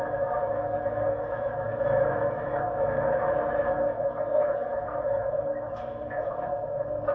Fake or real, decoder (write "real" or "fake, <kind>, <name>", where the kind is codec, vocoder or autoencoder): fake, autoencoder, DAC-VAE